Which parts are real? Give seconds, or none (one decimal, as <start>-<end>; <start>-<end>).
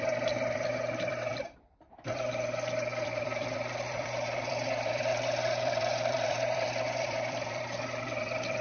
none